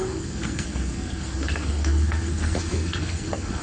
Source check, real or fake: fake